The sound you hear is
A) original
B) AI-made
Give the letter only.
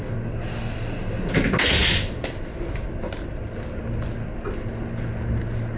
A